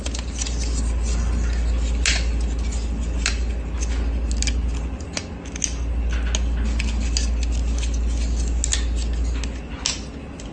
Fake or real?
real